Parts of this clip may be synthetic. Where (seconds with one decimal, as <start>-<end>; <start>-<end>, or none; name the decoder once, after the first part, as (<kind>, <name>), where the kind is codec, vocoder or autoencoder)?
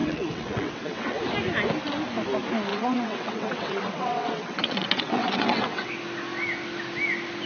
0.0-1.2 (vocoder, WaveNeXt); 2.7-5.9